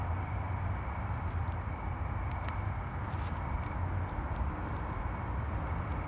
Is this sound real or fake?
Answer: real